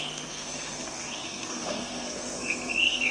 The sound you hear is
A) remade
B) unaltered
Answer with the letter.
A